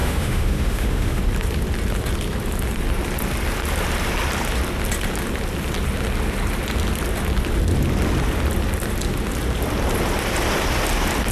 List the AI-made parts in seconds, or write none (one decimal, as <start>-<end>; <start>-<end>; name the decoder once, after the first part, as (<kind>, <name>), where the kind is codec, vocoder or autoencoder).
0.0-1.2 (autoencoder, DAC-VAE)